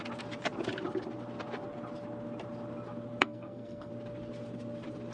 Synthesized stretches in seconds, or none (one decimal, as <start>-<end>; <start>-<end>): 3.2-3.9